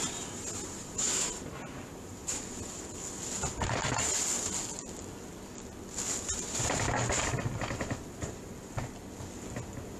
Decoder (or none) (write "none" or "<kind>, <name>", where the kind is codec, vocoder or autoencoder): none